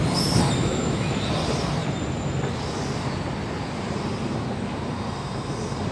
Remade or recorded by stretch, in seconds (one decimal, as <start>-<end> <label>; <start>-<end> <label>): 0.0-0.6 recorded; 0.6-1.1 remade; 1.1-5.9 recorded